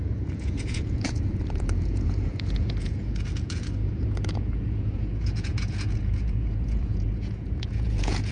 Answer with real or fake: fake